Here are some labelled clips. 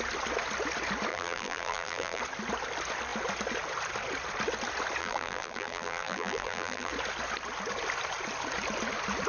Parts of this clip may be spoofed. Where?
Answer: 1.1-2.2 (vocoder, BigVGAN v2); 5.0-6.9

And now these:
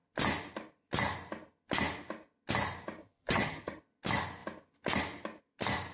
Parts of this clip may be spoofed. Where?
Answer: 3.0-3.8 (vocoder, HiFi-GAN)

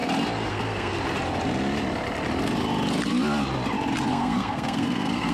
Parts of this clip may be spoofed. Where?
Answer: 0.5-0.9 (codec, SNAC); 4.1-5.3

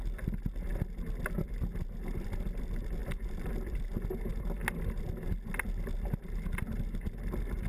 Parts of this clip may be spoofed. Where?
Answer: none